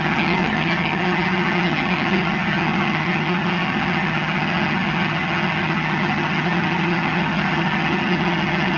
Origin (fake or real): fake